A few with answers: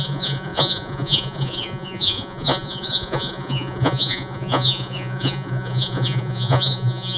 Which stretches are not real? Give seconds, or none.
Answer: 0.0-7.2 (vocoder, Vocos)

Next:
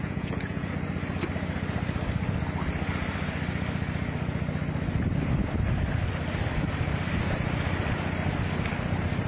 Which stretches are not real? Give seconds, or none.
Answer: 0.0-0.7 (vocoder, Vocos)

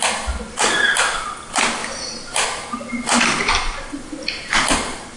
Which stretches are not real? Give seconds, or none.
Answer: none

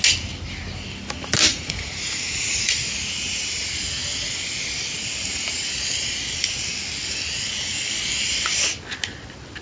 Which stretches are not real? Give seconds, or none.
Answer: 1.5-2.8 (vocoder, Vocos)

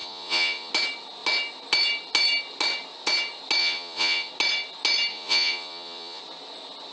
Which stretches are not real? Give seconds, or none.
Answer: 0.0-0.7 (vocoder, Vocos); 3.6-4.3; 5.1-6.2

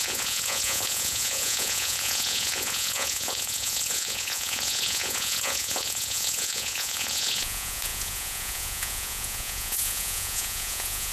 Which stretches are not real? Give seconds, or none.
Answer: 0.0-11.1 (vocoder, Vocos)